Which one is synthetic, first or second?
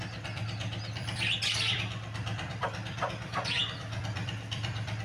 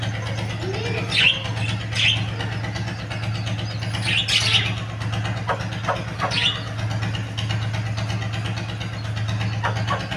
first